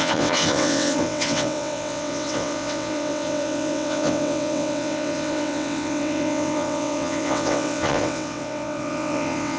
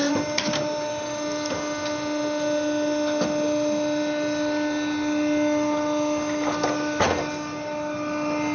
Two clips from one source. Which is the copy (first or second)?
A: first